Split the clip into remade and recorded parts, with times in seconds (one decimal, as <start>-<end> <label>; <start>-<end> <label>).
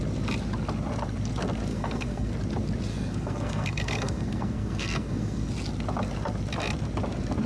0.0-1.7 recorded; 1.7-2.3 remade; 2.3-2.9 recorded; 2.9-5.5 remade; 5.5-7.5 recorded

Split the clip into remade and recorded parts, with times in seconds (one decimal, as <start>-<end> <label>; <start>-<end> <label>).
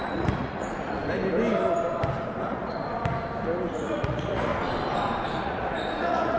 0.0-1.0 remade; 1.0-2.4 recorded; 2.4-2.8 remade; 2.8-3.7 recorded; 3.7-4.5 remade; 4.5-5.4 recorded; 5.4-6.4 remade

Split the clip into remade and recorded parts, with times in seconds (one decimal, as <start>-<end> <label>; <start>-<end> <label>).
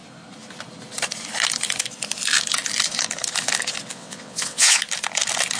0.0-3.9 recorded; 3.9-4.8 remade; 4.8-5.6 recorded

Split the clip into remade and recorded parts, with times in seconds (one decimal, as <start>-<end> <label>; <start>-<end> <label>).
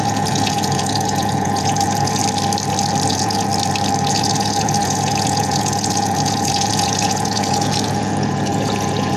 0.0-2.2 remade; 2.2-3.1 recorded; 3.1-3.5 remade; 3.5-4.1 recorded; 4.1-9.2 remade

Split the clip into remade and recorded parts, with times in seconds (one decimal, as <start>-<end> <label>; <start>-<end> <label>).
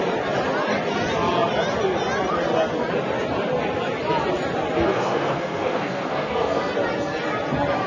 0.0-4.9 recorded; 4.9-6.7 remade; 6.7-7.9 recorded